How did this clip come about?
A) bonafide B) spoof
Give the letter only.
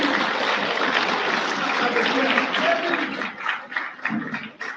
A